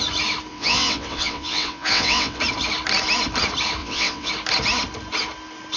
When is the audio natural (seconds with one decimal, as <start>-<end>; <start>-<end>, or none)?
0.0-0.5; 2.4-3.8; 4.3-5.8